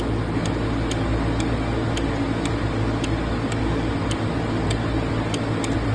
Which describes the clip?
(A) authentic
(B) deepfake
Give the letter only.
A